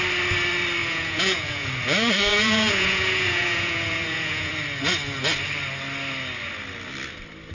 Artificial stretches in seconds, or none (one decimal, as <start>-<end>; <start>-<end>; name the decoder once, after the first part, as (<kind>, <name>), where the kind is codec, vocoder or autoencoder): 0.8-1.7 (vocoder, Vocos); 2.3-4.5